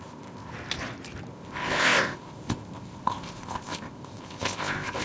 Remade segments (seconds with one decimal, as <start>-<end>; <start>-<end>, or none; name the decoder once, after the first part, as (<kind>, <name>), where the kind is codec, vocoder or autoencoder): 0.0-0.5 (codec, ZipCodec); 1.3-5.0